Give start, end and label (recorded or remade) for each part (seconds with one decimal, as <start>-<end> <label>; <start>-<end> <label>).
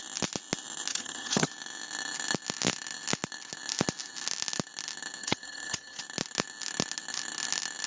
0.0-0.9 recorded; 0.9-1.5 remade; 1.5-5.2 recorded; 5.2-6.0 remade; 6.0-7.9 recorded